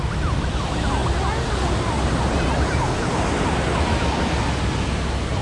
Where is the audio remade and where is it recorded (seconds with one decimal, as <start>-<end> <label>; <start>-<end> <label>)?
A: 0.0-5.4 recorded